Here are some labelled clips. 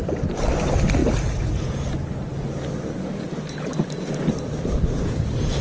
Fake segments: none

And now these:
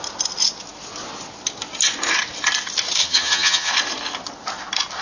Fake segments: 3.0-3.7